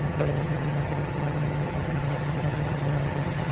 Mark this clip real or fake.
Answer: fake